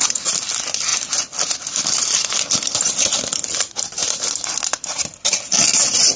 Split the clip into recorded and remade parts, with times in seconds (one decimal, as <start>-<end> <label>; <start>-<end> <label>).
0.0-6.2 recorded